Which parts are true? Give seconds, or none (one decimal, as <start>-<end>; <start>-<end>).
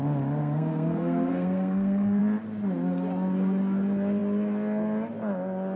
0.0-0.4; 2.2-5.8